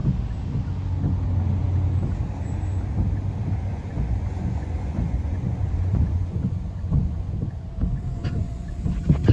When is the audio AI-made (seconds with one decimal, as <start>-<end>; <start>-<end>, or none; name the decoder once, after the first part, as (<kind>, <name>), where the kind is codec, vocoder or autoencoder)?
3.7-8.9 (vocoder, Vocos)